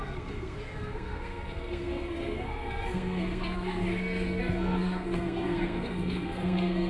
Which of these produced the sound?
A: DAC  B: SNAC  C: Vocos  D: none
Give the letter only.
B